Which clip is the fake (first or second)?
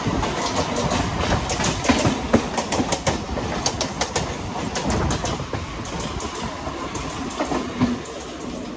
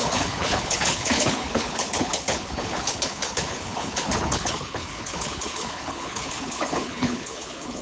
second